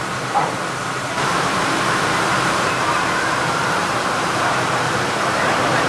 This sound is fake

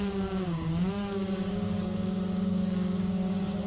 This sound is fake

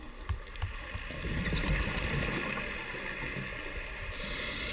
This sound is real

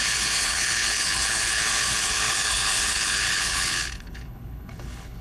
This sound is fake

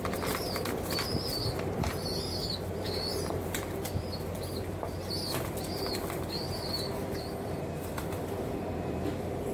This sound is fake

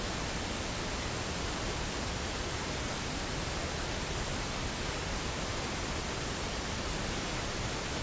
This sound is real